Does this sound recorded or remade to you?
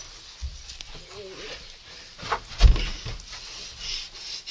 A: recorded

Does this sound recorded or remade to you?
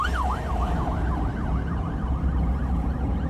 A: recorded